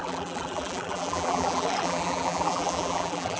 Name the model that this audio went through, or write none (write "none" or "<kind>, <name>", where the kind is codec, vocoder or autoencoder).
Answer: vocoder, BigVGAN v2